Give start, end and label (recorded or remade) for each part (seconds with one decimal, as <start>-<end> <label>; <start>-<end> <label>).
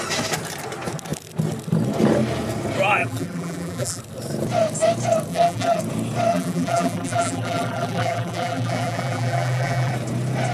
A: 0.0-3.0 recorded; 3.0-4.0 remade; 4.0-5.3 recorded; 5.3-5.8 remade; 5.8-6.3 recorded; 6.3-9.9 remade; 9.9-10.5 recorded